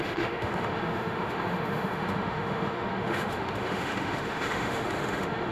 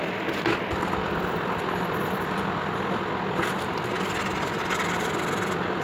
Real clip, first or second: second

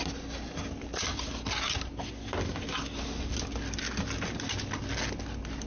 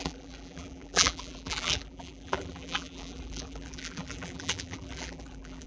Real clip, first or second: first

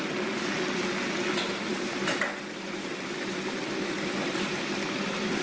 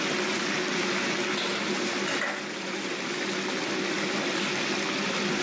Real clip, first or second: second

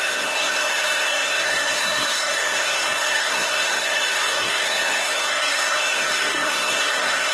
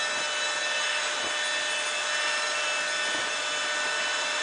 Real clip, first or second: second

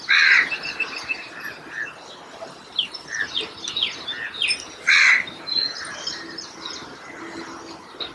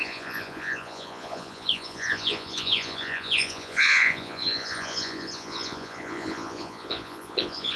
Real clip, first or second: first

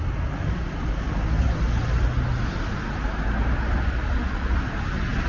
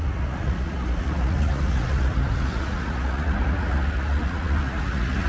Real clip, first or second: first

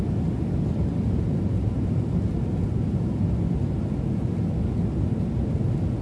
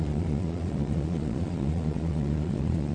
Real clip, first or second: first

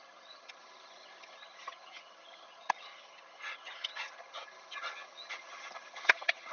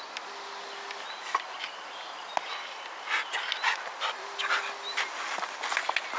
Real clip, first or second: second